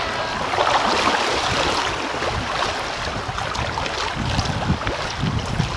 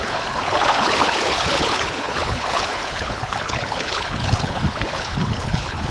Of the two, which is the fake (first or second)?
second